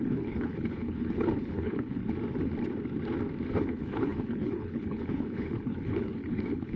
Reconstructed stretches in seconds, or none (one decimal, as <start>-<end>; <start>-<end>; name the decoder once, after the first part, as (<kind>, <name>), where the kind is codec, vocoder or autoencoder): 0.0-2.0 (codec, HILCodec); 3.5-6.8